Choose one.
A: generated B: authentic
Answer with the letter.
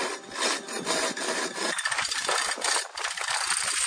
B